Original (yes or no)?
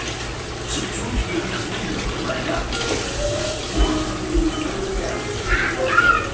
yes